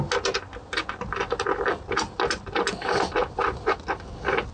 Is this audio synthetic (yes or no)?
no